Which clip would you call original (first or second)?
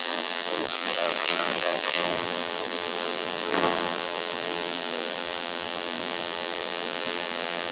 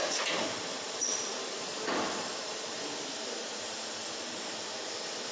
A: second